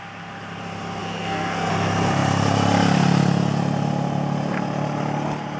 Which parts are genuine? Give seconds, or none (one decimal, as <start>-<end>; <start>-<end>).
0.0-1.0; 1.7-5.6